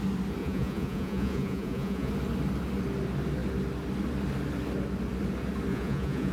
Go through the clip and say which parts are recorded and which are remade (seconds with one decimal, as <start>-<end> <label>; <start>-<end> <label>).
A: 0.0-0.4 recorded; 0.4-2.1 remade; 2.1-5.7 recorded; 5.7-6.3 remade